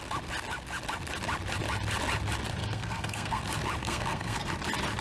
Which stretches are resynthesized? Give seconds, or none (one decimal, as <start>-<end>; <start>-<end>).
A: 2.6-3.4; 3.8-4.5